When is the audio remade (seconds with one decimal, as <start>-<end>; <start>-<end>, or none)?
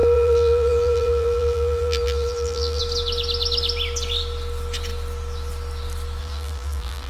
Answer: 0.0-2.8; 6.2-7.1